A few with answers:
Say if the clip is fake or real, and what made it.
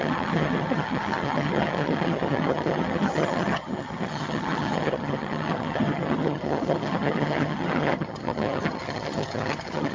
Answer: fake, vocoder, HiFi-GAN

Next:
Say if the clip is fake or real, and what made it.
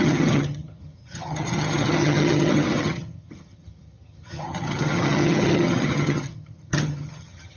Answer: fake, vocoder, HiFi-GAN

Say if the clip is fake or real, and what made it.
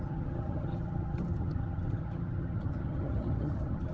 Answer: fake, vocoder, HiFi-GAN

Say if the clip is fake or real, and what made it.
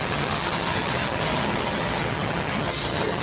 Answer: fake, vocoder, HiFi-GAN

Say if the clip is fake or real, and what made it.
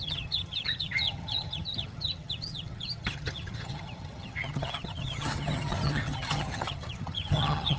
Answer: fake, vocoder, HiFi-GAN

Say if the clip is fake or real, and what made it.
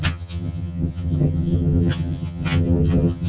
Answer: fake, vocoder, HiFi-GAN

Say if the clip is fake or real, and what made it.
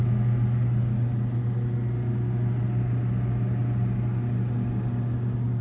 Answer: real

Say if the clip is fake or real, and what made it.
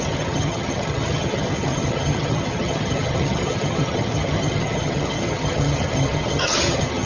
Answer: fake, vocoder, HiFi-GAN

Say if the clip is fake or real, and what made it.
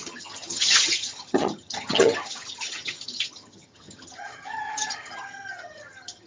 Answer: fake, vocoder, HiFi-GAN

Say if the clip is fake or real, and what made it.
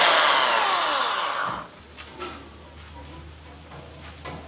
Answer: real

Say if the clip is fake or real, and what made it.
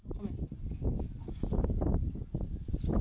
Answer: real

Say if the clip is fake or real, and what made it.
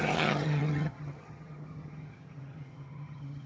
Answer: fake, vocoder, HiFi-GAN